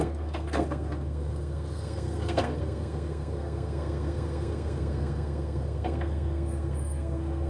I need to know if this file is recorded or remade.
remade